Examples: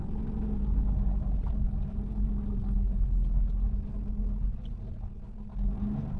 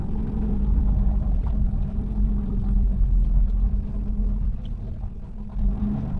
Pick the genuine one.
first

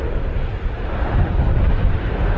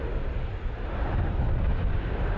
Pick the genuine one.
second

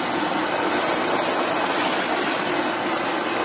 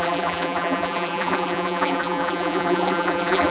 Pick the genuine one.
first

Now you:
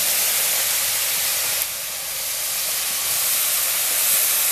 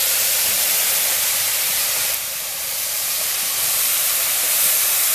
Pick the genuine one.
first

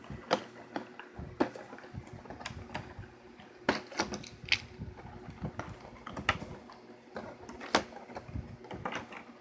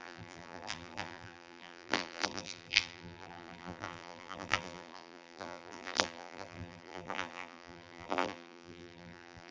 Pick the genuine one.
first